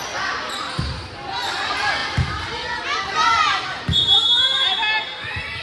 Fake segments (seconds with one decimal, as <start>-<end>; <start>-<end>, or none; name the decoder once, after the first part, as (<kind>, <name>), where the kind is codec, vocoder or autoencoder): none